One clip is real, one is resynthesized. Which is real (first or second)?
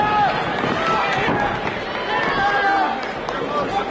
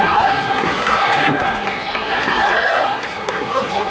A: first